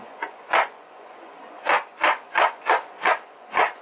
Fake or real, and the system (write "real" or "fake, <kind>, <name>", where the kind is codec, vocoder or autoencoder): fake, vocoder, Vocos